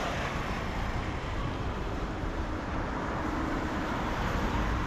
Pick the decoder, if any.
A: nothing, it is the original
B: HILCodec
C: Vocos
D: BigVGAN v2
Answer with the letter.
D